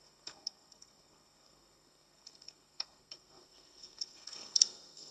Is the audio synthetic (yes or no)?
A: yes